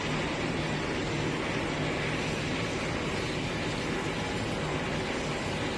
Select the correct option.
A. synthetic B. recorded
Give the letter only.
B